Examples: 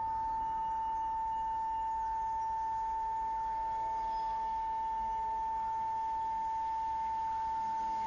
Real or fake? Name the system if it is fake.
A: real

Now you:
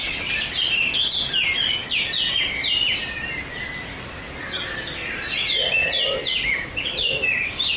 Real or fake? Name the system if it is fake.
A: real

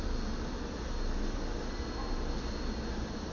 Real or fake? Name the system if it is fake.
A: real